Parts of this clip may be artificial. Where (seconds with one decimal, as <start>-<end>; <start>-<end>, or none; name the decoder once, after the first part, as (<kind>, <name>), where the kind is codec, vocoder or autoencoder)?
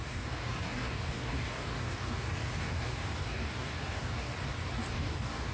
0.0-4.3 (codec, DAC); 4.9-5.5